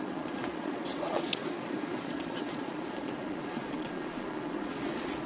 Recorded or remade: remade